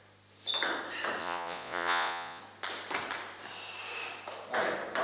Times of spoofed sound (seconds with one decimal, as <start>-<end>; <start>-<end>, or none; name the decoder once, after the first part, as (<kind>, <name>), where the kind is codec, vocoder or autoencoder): 1.2-2.4 (vocoder, Vocos)